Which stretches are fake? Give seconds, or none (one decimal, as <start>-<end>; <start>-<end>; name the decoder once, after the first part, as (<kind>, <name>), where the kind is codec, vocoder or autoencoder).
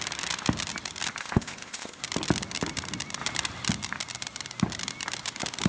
1.2-2.0 (codec, ZipCodec)